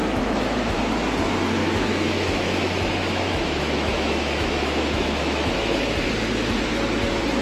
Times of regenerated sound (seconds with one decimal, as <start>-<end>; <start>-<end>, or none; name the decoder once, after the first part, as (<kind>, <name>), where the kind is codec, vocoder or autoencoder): 0.0-0.8 (autoencoder, DAC-VAE); 1.6-5.8